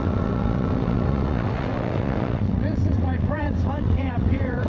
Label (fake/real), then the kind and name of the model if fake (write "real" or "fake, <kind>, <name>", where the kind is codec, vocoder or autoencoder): fake, vocoder, WaveNeXt